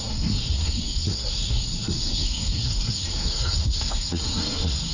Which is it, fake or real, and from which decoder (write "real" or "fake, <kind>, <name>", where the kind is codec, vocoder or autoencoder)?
fake, codec, SNAC